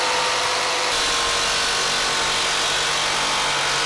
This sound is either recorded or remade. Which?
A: recorded